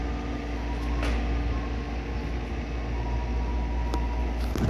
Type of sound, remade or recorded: recorded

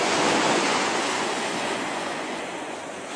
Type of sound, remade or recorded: remade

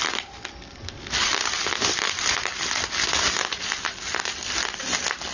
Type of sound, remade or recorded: recorded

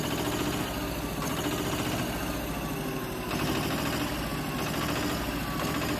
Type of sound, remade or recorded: recorded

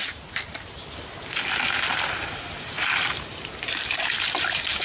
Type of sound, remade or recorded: recorded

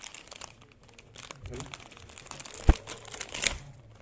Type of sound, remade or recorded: recorded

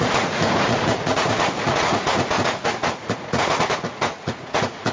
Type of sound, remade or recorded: remade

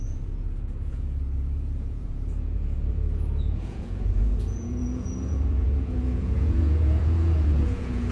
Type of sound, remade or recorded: remade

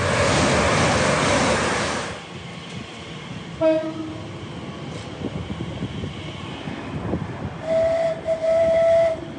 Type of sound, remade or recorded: recorded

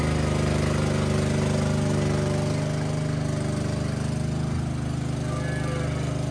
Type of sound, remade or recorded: recorded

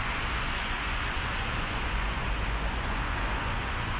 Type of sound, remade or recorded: remade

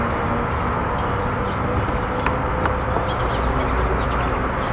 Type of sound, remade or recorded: recorded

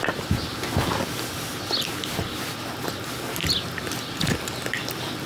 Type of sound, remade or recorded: recorded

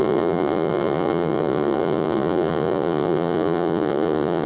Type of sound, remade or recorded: remade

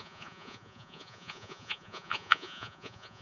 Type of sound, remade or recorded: remade